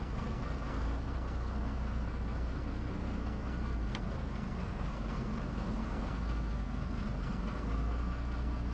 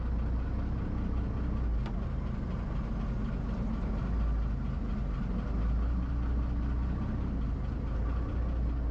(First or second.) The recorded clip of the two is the second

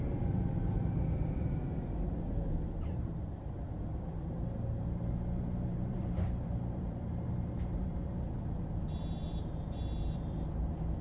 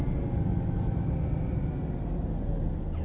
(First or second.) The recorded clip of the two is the second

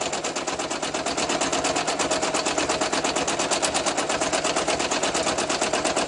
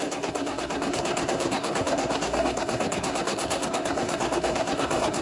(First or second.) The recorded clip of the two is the first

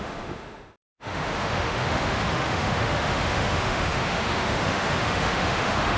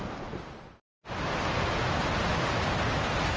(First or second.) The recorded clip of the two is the second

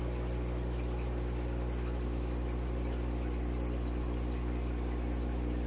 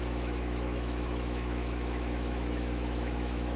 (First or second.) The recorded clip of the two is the first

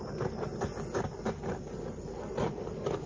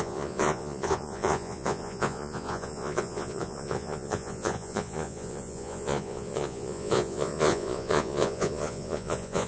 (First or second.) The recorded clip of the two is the first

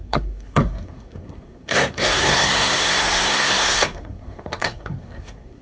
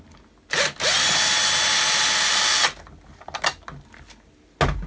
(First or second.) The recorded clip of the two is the second